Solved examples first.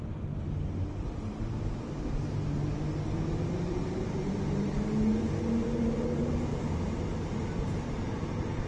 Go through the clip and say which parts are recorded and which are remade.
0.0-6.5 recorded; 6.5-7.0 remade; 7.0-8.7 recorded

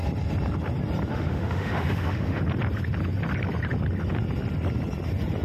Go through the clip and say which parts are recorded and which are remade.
0.0-1.1 recorded; 1.1-2.4 remade; 2.4-5.4 recorded

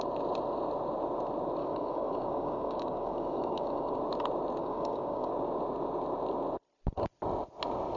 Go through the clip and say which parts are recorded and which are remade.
0.0-1.6 recorded; 1.6-4.0 remade; 4.0-4.6 recorded; 4.6-5.3 remade; 5.3-8.0 recorded

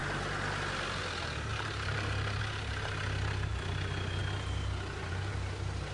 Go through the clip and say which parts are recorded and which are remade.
0.0-1.5 recorded; 1.5-2.4 remade; 2.4-5.9 recorded

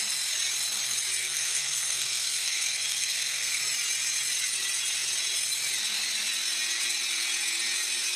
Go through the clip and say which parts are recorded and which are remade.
0.0-1.2 recorded; 1.2-3.6 remade; 3.6-8.2 recorded

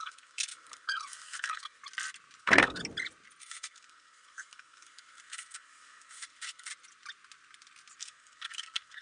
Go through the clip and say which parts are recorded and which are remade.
0.0-1.8 remade; 1.8-2.4 recorded; 2.4-2.8 remade; 2.8-3.4 recorded; 3.4-6.7 remade; 6.7-8.0 recorded; 8.0-9.0 remade